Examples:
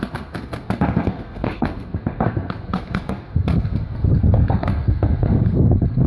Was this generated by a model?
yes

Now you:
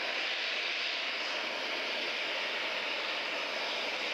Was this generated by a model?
yes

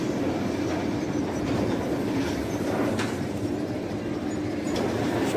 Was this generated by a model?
no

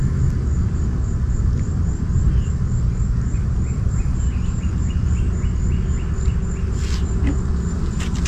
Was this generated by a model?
no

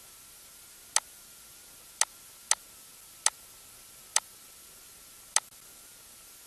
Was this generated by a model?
no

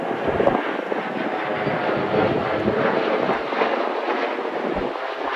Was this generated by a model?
no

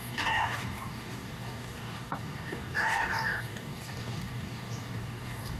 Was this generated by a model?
yes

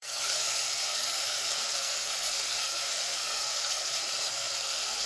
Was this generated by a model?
yes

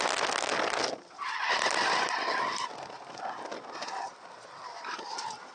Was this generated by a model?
no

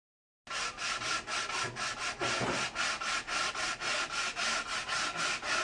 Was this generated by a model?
no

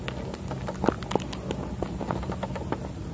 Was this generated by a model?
no